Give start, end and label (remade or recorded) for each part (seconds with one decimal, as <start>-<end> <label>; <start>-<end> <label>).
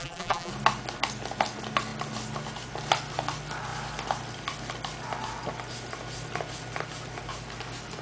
0.0-0.5 remade; 0.5-8.0 recorded